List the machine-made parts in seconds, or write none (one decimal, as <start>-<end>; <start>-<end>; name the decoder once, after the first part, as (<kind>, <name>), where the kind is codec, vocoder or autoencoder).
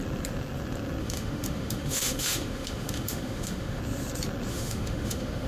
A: 1.0-3.8 (autoencoder, DAC-VAE); 4.5-5.5